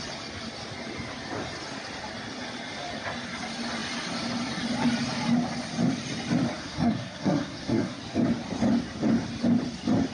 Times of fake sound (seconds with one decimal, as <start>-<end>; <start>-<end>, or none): 6.6-8.0